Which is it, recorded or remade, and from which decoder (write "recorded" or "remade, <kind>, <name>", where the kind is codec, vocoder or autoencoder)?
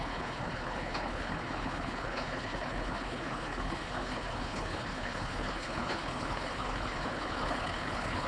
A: remade, codec, HILCodec